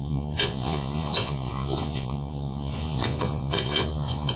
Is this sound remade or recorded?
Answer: remade